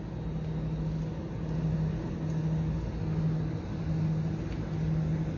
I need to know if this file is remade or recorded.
recorded